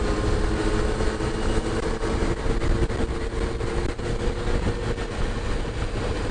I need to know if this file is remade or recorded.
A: recorded